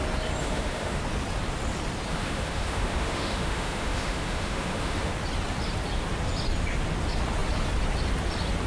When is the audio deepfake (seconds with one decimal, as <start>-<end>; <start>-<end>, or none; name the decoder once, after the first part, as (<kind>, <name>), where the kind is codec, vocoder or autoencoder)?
0.4-1.0 (autoencoder, DAC-VAE); 2.1-5.1